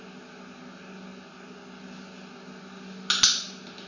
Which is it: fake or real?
real